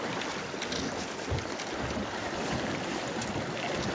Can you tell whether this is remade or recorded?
recorded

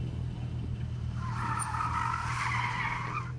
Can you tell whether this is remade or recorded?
recorded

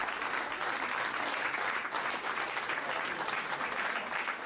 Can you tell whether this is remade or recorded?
recorded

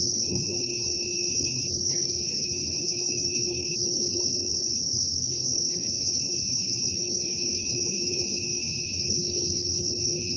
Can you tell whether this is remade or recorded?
remade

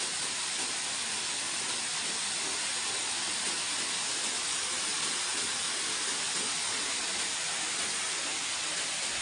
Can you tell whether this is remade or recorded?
recorded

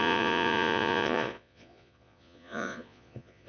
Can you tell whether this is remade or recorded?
remade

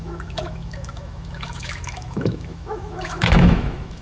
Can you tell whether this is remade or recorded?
remade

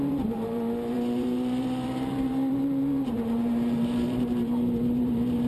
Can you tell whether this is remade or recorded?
remade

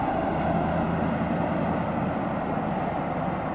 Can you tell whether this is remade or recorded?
recorded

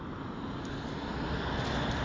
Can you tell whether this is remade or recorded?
recorded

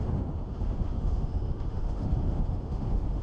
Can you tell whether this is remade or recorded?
remade